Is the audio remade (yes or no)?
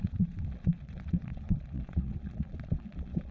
yes